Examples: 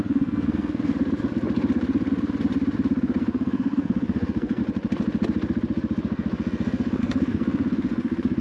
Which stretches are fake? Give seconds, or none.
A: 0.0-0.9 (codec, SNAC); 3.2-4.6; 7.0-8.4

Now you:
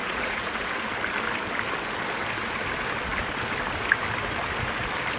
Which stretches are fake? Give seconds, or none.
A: 0.0-0.7 (vocoder, Vocos)